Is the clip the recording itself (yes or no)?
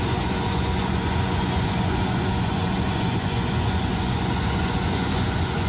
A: no